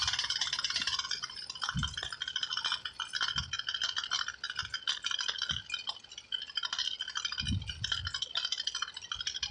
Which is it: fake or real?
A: real